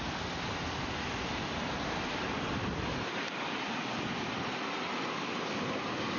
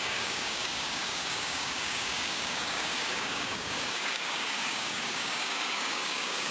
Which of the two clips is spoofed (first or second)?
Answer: second